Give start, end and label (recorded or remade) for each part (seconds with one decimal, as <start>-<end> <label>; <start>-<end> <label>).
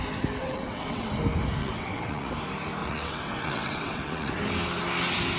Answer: 0.0-0.4 recorded; 0.4-1.1 remade; 1.1-1.6 recorded; 1.6-2.3 remade; 2.3-2.8 recorded; 2.8-4.4 remade; 4.4-5.4 recorded